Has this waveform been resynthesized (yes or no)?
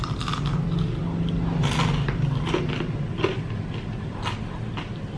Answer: no